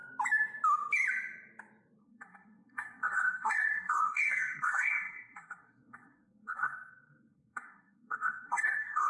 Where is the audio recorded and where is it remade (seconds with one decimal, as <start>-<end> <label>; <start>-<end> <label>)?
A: 0.0-2.0 recorded; 2.0-9.1 remade